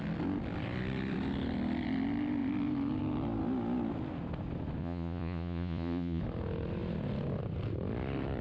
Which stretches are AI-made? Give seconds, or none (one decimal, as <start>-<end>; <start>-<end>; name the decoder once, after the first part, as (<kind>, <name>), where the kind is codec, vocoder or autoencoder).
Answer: 4.8-6.2 (vocoder, Vocos)